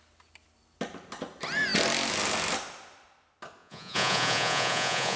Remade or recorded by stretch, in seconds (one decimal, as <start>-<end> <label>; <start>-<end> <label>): 0.0-3.6 recorded; 3.6-5.2 remade